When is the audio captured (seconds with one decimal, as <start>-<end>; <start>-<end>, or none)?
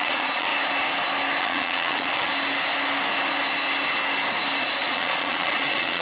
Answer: 0.5-1.4; 2.3-4.6